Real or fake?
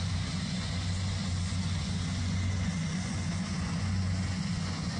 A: fake